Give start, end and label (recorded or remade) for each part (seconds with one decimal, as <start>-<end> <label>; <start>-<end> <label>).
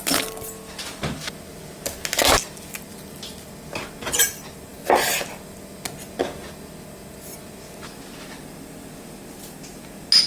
0.0-10.3 recorded